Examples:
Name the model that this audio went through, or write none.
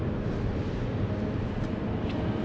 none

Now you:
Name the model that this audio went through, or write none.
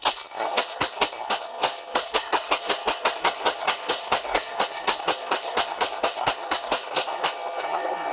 codec, SNAC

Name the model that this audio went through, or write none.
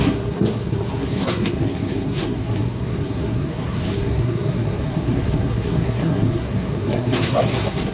codec, SNAC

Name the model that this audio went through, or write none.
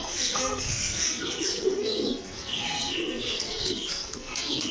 codec, SNAC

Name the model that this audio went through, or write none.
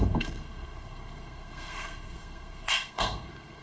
codec, SNAC